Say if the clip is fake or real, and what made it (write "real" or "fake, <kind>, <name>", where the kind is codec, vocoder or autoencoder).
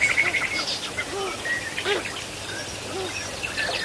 real